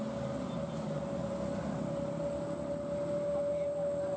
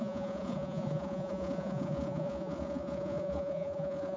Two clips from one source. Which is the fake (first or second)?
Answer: second